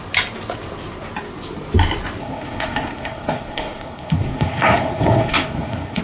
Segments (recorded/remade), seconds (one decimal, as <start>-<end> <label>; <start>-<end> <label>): 0.0-2.2 recorded; 2.2-6.0 remade